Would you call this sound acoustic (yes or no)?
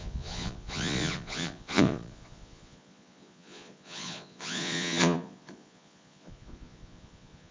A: no